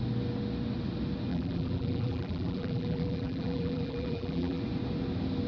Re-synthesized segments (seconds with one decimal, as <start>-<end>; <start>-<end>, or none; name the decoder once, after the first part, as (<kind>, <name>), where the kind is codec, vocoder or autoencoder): 1.3-4.6 (vocoder, BigVGAN v2)